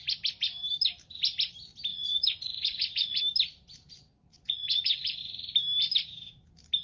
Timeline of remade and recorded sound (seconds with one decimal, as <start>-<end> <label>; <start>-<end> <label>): 0.0-1.9 recorded; 1.9-3.2 remade; 3.2-4.3 recorded; 4.3-5.2 remade; 5.2-6.8 recorded